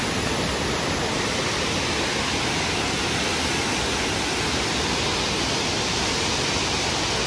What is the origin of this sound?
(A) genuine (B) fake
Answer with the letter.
A